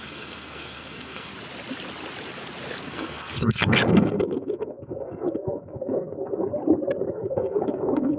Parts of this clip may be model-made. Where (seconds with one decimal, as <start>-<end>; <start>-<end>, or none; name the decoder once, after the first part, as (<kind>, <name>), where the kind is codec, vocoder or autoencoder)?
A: 0.0-1.3 (codec, SNAC); 2.8-6.5; 7.1-8.2